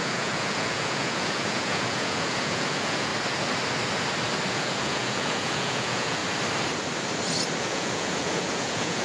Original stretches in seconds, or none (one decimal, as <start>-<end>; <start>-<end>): 3.1-4.5; 6.2-7.6